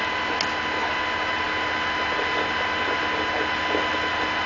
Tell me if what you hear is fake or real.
real